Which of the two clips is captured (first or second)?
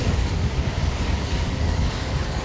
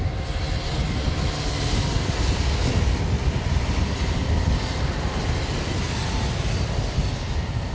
second